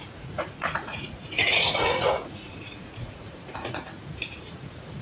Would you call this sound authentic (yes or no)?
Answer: no